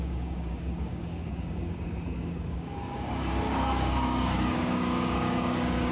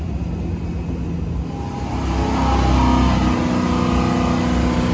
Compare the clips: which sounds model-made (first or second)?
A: first